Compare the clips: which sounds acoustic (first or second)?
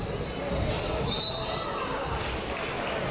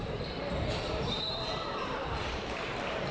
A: first